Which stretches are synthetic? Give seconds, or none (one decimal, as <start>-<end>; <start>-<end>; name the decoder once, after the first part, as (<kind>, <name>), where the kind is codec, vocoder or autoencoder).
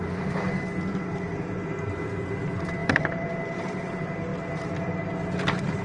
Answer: 0.9-1.5 (vocoder, BigVGAN v2); 2.8-3.3